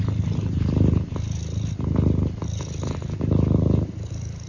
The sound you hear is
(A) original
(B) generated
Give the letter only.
A